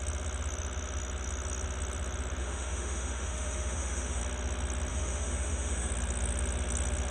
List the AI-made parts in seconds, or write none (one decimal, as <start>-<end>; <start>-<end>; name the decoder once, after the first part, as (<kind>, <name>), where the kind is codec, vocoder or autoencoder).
2.4-4.2 (autoencoder, DAC-VAE); 4.9-5.9